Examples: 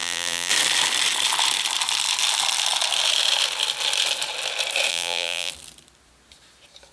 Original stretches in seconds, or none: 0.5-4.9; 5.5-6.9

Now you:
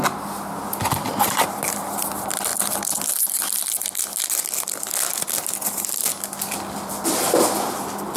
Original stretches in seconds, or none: 0.0-8.2

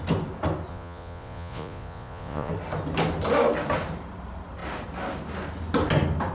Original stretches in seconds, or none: 0.0-0.7; 2.5-6.3

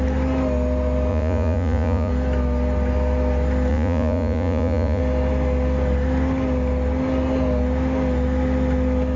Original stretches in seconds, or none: 0.0-1.1; 2.1-3.7; 5.0-9.2

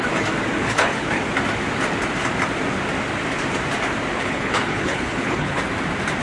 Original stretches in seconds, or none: 0.0-0.6; 1.2-4.1; 5.6-6.2

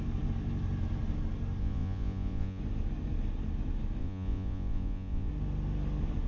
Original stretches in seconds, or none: 0.0-1.6; 2.6-4.0; 5.3-6.3

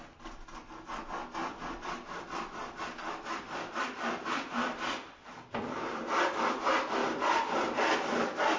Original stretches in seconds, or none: 0.0-1.4; 6.3-7.0